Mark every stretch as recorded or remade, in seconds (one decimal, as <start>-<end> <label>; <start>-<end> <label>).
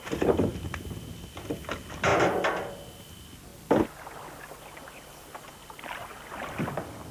0.0-7.1 recorded